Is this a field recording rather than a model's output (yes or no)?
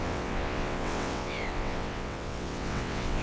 no